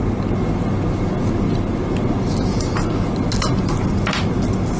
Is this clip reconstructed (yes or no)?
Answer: no